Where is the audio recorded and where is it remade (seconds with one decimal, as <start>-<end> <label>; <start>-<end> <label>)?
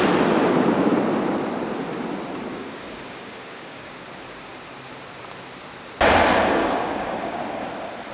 0.0-2.5 recorded; 2.5-3.9 remade; 3.9-6.6 recorded; 6.6-7.4 remade; 7.4-8.1 recorded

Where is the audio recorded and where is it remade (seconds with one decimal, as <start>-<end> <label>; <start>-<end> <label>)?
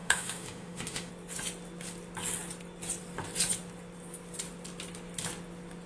0.0-1.1 remade; 1.1-5.9 recorded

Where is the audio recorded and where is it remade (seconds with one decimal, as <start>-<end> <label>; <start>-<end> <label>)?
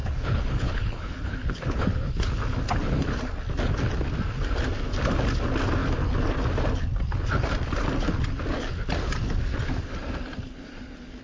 0.0-2.4 remade; 2.4-11.2 recorded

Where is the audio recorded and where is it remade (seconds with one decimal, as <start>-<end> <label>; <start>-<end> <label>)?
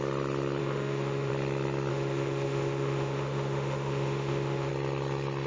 0.0-0.6 recorded; 0.6-1.3 remade; 1.3-1.9 recorded; 1.9-4.7 remade; 4.7-5.5 recorded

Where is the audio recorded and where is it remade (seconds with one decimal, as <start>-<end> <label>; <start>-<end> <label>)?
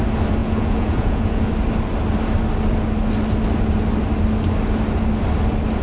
0.0-0.4 recorded; 0.4-1.5 remade; 1.5-5.8 recorded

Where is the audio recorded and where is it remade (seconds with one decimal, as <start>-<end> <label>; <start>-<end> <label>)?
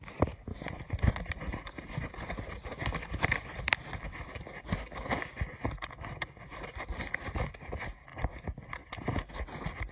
0.0-0.5 recorded; 0.5-1.1 remade; 1.1-9.9 recorded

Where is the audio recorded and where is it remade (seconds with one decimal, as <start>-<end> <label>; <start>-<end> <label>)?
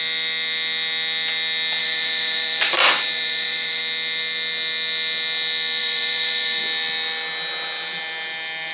0.0-1.8 recorded; 1.8-3.8 remade; 3.8-5.8 recorded; 5.8-6.6 remade; 6.6-8.7 recorded